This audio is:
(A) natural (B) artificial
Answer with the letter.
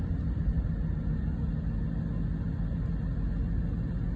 A